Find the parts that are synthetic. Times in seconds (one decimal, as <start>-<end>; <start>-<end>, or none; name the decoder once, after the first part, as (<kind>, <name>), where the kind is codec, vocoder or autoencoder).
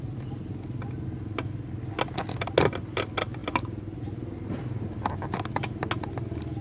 none